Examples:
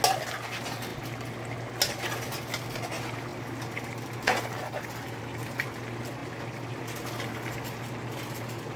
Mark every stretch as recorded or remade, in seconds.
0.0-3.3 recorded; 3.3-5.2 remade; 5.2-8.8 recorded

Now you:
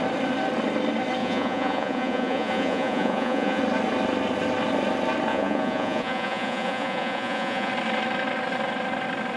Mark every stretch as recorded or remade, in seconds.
0.0-1.2 recorded; 1.2-3.6 remade; 3.6-5.3 recorded; 5.3-7.7 remade; 7.7-9.4 recorded

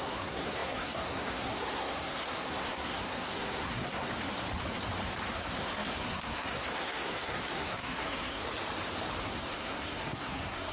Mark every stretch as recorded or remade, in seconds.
0.0-4.1 remade; 4.1-5.3 recorded; 5.3-8.4 remade; 8.4-9.2 recorded; 9.2-10.7 remade

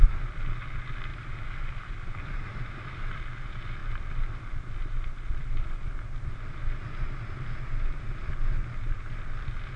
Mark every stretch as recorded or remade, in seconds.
0.0-1.1 recorded; 1.1-2.6 remade; 2.6-9.8 recorded

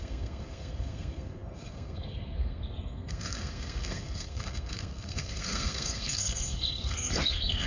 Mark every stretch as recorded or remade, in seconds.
0.0-7.7 remade

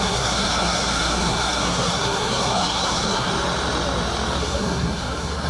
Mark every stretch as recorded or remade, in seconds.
0.0-3.3 remade; 3.3-4.4 recorded; 4.4-5.5 remade

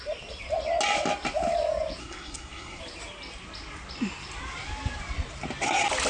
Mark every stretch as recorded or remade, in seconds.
0.0-2.0 recorded; 2.0-2.8 remade; 2.8-6.1 recorded

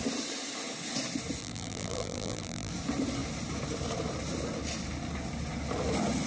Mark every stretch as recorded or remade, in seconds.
0.0-1.4 recorded; 1.4-2.7 remade; 2.7-6.3 recorded